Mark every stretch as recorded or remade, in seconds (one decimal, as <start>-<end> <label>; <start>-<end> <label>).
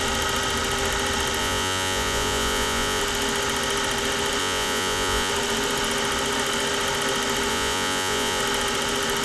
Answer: 0.0-1.4 recorded; 1.4-3.0 remade; 3.0-4.4 recorded; 4.4-5.3 remade; 5.3-7.5 recorded; 7.5-8.4 remade; 8.4-9.2 recorded